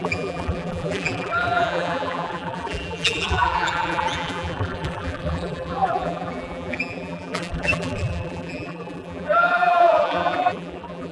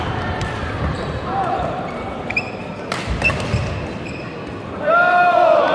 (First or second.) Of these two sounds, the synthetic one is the first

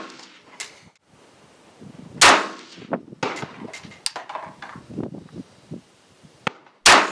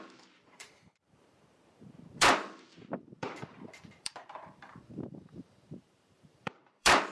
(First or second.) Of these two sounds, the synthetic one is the second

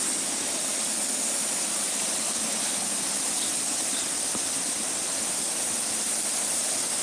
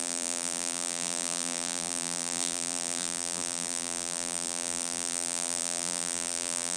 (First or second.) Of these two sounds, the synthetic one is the second